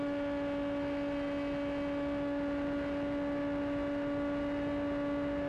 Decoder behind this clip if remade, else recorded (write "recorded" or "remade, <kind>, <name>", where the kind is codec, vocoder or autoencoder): recorded